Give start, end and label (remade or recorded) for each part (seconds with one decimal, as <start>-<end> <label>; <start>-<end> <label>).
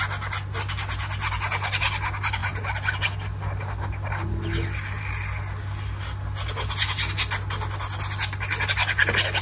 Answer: 0.0-9.4 recorded